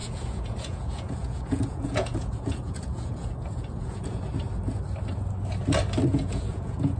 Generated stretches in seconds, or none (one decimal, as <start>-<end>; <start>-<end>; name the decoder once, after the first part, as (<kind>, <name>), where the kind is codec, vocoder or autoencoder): 0.0-4.2 (vocoder, Vocos); 6.1-7.0